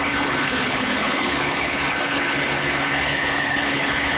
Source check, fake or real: fake